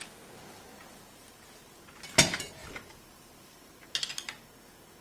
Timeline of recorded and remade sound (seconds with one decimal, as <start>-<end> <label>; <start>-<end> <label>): 0.0-2.6 recorded; 2.6-3.7 remade; 3.7-5.0 recorded